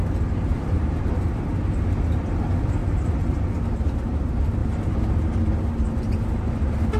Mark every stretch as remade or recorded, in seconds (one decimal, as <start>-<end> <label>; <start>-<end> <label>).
0.0-0.5 recorded; 0.5-1.1 remade; 1.1-2.8 recorded; 2.8-3.5 remade; 3.5-4.6 recorded; 4.6-7.0 remade